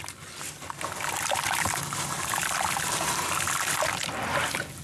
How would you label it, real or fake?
real